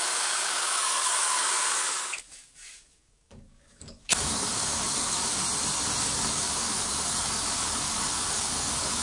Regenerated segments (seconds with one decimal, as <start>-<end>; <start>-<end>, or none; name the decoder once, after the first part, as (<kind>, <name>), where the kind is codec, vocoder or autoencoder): 0.0-5.4 (codec, DAC); 6.0-9.0